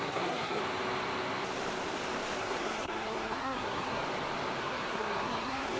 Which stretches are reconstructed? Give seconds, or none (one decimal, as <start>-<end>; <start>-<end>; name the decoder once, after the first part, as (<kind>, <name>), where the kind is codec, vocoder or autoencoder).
0.0-0.6 (codec, SNAC); 2.4-4.0; 4.6-5.8